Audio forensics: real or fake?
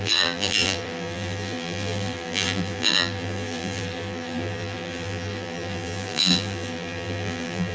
fake